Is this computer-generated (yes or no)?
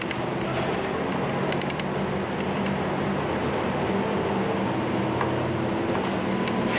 no